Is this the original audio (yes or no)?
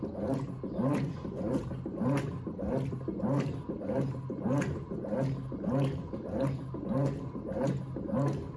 yes